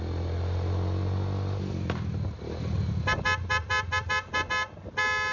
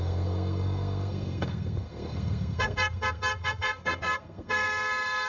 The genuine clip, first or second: first